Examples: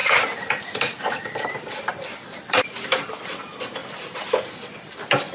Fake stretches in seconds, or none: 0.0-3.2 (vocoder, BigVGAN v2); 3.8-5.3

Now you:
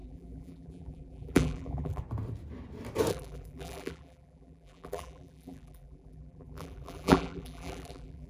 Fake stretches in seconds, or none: 0.0-2.0 (vocoder, BigVGAN v2); 3.1-8.3

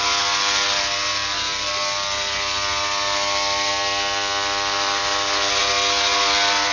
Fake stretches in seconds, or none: none

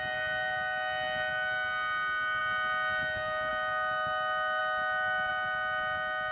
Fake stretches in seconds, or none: none

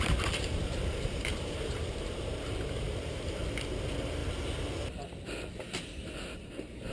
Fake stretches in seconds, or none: 0.0-4.2 (vocoder, BigVGAN v2); 6.5-6.9

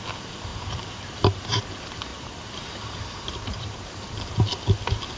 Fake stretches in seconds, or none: 0.5-1.6 (vocoder, BigVGAN v2); 2.1-3.9

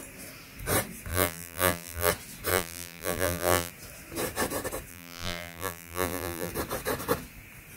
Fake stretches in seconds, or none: 1.1-2.1 (vocoder, BigVGAN v2); 2.5-3.7; 4.9-6.5

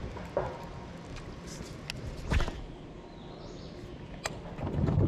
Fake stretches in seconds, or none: none